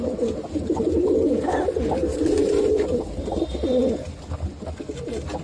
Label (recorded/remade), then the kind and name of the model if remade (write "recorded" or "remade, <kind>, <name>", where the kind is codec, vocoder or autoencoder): recorded